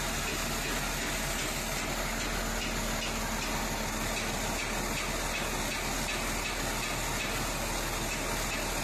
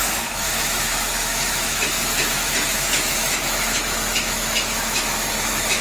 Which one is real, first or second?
first